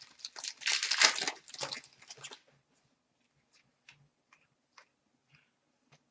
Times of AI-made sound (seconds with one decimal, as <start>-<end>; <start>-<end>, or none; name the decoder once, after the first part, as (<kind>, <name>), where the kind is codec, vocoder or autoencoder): none